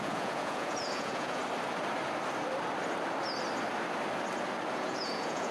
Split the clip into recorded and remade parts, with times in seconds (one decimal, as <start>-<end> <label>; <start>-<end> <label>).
0.0-1.4 remade; 1.4-4.7 recorded; 4.7-5.5 remade